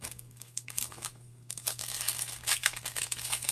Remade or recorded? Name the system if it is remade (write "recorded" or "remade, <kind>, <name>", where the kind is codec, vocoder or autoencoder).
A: remade, codec, SNAC